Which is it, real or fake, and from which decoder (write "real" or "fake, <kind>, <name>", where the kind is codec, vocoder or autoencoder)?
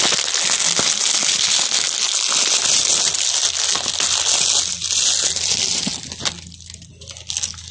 real